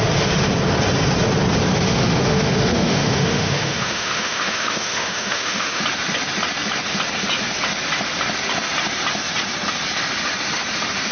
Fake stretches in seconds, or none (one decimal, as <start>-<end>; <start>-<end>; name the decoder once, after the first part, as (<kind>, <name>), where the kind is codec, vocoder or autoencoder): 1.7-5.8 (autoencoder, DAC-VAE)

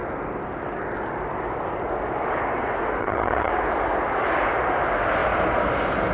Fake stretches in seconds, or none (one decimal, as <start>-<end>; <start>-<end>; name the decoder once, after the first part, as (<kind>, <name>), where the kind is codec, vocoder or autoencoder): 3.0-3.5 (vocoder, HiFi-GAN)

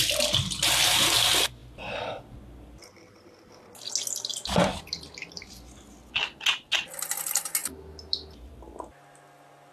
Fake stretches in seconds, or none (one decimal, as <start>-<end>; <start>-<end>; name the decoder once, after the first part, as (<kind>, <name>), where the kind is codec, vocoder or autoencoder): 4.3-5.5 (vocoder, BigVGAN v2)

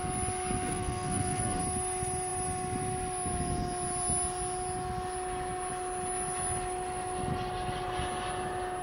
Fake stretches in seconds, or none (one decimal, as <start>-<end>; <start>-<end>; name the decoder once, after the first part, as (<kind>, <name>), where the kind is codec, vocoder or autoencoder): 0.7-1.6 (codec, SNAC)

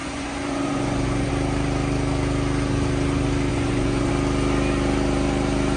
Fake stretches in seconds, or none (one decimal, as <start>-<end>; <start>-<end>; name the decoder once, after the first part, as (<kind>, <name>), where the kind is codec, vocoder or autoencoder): 0.0-1.3 (vocoder, Vocos); 3.5-4.1

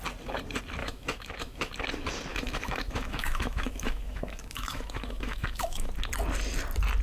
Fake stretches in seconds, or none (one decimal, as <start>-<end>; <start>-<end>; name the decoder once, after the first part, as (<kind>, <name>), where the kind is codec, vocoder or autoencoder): 0.8-1.7 (autoencoder, DAC-VAE); 2.3-5.9

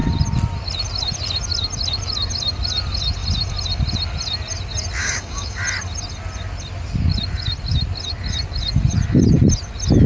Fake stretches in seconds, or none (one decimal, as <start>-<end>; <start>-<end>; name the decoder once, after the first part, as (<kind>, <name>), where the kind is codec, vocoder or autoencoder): 5.0-5.6 (codec, DAC)

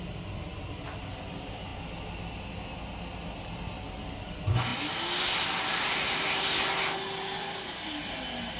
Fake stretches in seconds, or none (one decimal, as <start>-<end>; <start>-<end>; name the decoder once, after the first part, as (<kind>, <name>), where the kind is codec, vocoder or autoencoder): none